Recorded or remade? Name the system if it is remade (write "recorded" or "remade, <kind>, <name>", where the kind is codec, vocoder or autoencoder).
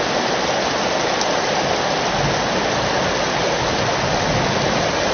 recorded